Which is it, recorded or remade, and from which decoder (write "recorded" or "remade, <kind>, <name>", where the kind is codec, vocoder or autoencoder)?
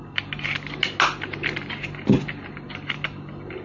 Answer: recorded